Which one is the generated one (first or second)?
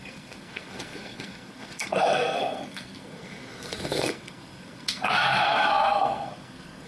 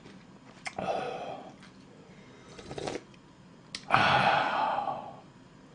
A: first